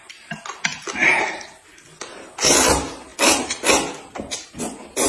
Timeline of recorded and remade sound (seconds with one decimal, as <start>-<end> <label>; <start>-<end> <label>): 0.0-5.1 recorded